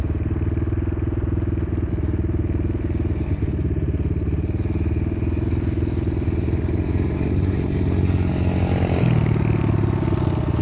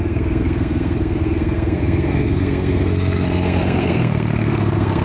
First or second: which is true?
first